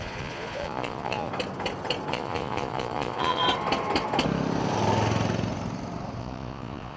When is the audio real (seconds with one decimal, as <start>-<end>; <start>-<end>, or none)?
1.3-2.1; 3.4-6.2